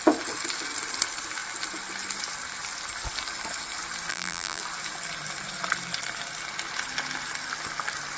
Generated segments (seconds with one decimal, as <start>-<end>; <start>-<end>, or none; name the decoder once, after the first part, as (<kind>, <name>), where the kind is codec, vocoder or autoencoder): 4.1-4.6 (vocoder, BigVGAN v2)